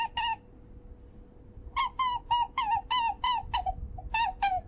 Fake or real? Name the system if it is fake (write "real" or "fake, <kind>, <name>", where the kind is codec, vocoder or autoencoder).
real